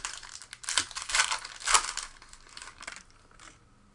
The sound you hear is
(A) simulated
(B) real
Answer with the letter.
B